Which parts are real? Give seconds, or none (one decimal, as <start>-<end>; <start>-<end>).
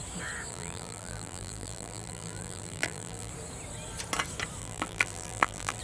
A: 0.0-0.5; 3.3-4.6